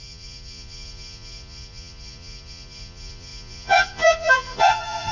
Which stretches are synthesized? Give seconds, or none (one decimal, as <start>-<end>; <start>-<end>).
0.0-5.1

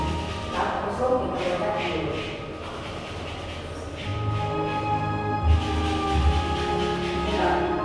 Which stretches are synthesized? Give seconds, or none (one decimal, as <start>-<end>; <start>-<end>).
none

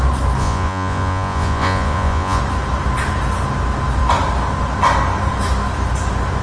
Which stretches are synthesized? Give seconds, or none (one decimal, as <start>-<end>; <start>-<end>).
0.4-2.4

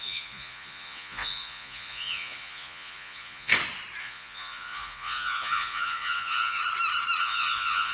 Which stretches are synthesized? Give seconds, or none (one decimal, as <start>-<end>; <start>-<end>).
0.0-3.5; 4.0-6.6; 7.2-7.9

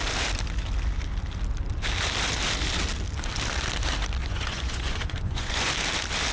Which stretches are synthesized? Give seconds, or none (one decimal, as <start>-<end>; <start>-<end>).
4.2-5.7

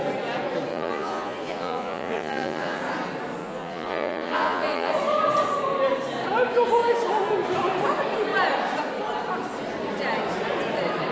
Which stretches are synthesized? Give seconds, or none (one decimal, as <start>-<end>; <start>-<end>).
0.7-2.8; 3.4-4.9

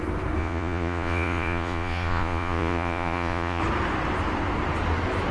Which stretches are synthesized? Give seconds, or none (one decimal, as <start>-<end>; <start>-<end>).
0.4-3.6

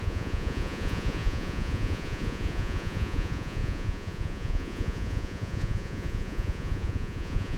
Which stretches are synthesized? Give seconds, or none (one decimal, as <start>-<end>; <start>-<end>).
0.0-7.6